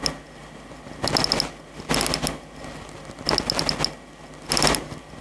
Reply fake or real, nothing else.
real